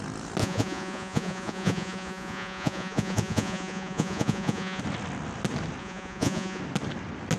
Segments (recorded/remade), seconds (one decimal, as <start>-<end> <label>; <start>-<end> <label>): 0.0-0.4 recorded; 0.4-4.8 remade; 4.8-5.8 recorded; 5.8-6.6 remade; 6.6-7.4 recorded